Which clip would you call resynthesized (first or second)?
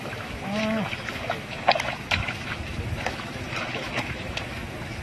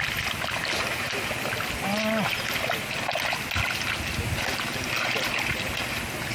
first